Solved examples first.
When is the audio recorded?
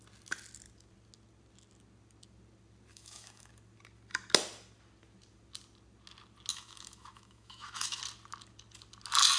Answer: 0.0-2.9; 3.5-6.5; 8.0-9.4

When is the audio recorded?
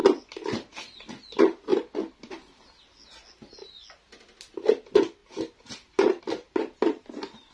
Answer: 0.0-7.5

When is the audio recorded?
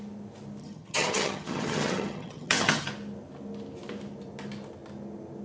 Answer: 0.0-0.6; 2.9-5.4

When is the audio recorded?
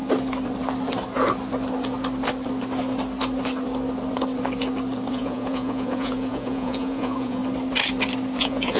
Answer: 0.0-5.1; 7.4-8.4